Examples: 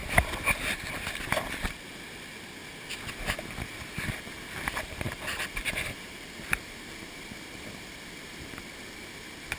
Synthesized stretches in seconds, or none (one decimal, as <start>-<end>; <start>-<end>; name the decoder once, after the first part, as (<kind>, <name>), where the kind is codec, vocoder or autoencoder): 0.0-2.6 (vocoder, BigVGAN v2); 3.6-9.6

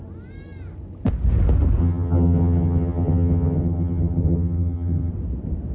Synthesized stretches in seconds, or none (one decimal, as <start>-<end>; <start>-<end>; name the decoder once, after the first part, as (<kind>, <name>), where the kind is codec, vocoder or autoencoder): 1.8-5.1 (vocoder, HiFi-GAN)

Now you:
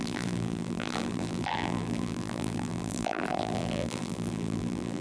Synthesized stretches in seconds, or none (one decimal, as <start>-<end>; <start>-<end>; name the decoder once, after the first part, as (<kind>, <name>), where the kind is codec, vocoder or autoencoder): 0.0-5.0 (vocoder, BigVGAN v2)

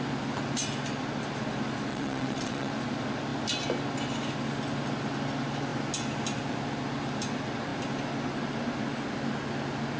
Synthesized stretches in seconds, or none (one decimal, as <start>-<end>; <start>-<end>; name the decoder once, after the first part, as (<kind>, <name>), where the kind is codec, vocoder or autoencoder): 1.9-2.7 (vocoder, WaveNeXt)

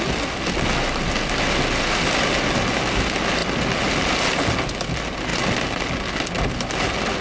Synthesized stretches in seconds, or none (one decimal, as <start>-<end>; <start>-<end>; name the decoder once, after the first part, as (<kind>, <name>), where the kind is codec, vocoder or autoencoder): none

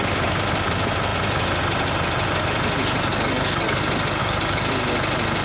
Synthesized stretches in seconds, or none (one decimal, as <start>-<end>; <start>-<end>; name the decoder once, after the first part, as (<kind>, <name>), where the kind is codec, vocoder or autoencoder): 3.1-3.8 (codec, DAC); 4.2-4.7